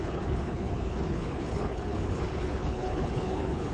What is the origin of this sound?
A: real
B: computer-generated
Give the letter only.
B